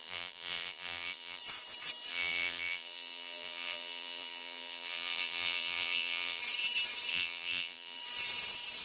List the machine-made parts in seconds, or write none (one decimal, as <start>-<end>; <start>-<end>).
0.0-1.4; 2.1-6.4; 7.1-8.0